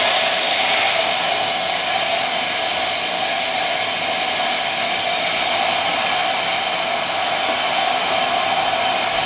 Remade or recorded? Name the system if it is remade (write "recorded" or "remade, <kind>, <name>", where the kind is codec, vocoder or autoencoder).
recorded